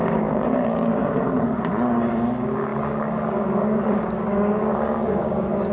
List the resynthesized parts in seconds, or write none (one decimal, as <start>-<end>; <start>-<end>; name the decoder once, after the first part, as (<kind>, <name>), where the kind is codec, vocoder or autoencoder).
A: 0.0-1.0 (codec, DAC); 2.1-5.7